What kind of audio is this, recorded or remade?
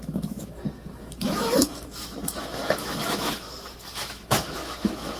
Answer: remade